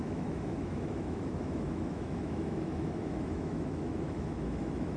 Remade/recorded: remade